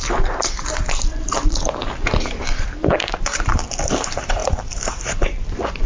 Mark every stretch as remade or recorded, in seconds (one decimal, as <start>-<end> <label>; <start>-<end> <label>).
0.0-1.8 remade; 1.8-2.4 recorded; 2.4-5.9 remade